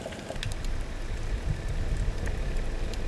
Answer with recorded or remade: recorded